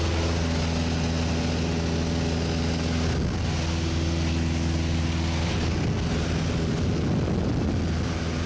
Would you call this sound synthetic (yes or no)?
no